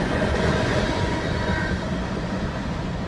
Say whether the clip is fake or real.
fake